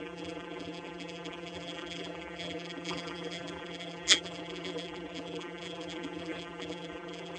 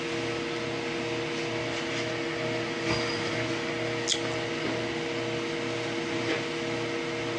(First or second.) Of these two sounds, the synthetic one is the first